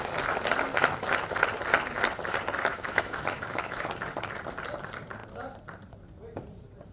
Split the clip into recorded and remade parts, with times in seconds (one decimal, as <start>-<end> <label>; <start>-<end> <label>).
0.0-2.7 recorded; 2.7-3.9 remade; 3.9-6.9 recorded

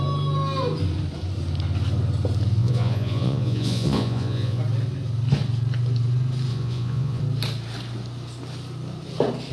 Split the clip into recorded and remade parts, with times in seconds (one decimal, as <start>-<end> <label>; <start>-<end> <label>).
0.0-2.6 recorded; 2.6-4.6 remade; 4.6-6.5 recorded; 6.5-7.2 remade; 7.2-9.5 recorded